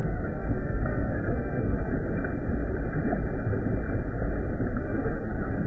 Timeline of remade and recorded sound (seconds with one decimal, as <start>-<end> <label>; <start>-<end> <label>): 0.0-1.9 remade; 1.9-4.8 recorded; 4.8-5.7 remade